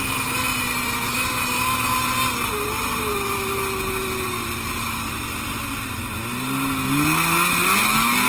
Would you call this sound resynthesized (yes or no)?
no